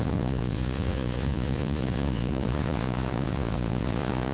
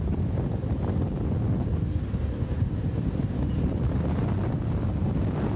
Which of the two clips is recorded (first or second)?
second